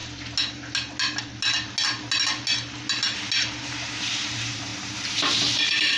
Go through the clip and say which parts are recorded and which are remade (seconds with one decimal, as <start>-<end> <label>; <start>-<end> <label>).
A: 0.0-3.6 recorded; 3.6-6.0 remade